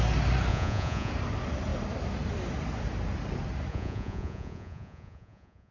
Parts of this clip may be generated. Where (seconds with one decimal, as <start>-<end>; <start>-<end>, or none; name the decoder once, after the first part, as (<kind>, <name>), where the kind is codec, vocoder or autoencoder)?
0.5-1.1 (vocoder, Vocos); 3.7-5.7